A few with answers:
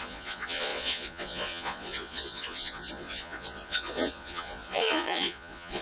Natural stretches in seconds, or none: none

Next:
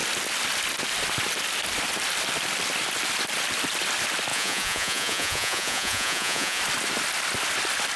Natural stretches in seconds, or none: 0.0-4.3; 6.6-8.0

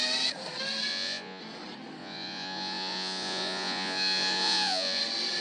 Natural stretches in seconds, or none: 0.0-0.9; 1.4-2.0; 5.0-5.4